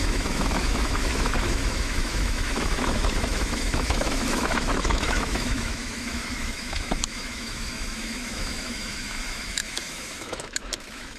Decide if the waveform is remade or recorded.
remade